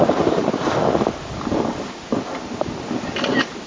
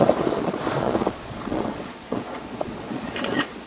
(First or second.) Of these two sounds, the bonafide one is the first